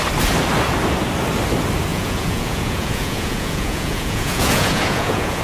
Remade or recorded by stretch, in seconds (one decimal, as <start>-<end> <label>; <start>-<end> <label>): 0.0-1.9 recorded; 1.9-5.4 remade